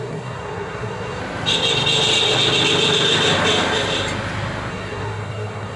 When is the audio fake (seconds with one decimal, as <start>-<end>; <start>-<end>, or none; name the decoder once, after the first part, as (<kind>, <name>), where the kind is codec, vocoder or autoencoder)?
0.0-1.2 (codec, SNAC); 4.7-5.8